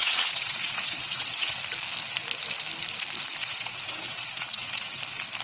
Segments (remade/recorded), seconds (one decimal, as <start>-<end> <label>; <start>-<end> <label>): 0.0-1.6 remade; 1.6-3.4 recorded; 3.4-5.0 remade; 5.0-5.4 recorded